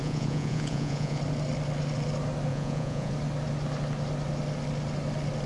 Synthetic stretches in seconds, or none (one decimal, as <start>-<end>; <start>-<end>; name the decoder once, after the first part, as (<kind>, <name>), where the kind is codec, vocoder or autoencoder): 0.0-1.2 (vocoder, Vocos); 2.5-3.1